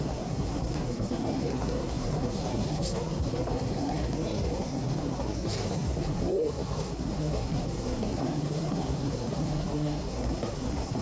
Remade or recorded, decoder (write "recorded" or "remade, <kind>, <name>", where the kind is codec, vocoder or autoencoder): remade, codec, SNAC